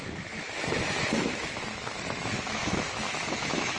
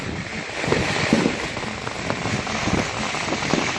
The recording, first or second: second